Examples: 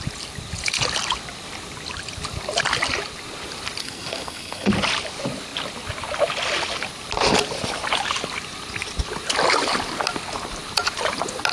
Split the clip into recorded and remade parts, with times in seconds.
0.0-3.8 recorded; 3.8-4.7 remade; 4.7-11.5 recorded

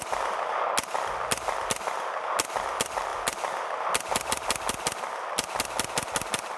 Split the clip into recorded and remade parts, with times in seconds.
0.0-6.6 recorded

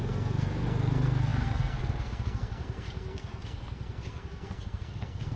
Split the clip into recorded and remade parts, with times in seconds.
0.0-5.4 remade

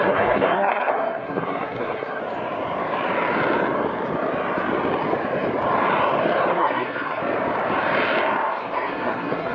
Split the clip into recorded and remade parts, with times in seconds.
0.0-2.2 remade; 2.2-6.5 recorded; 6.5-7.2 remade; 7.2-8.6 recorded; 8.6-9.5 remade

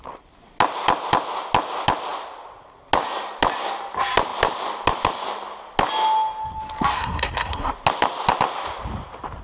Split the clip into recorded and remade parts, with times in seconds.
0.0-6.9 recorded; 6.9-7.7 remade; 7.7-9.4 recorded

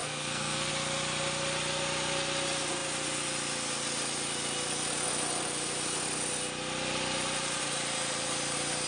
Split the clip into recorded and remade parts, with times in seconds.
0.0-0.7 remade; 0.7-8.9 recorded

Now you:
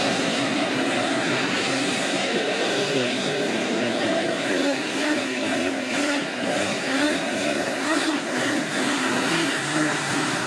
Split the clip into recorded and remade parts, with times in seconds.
0.0-10.5 remade